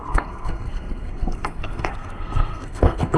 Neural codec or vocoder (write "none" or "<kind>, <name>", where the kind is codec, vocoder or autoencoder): codec, SNAC